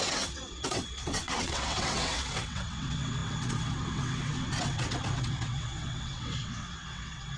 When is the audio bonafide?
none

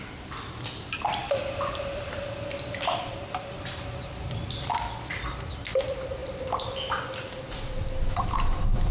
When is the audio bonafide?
none

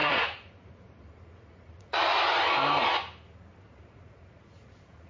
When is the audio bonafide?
2.1-3.6

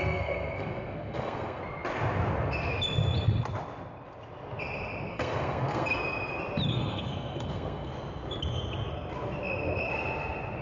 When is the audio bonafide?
1.6-5.1; 6.0-6.7; 7.9-10.6

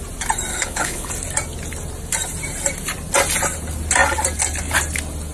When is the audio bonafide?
0.0-0.5; 1.1-5.3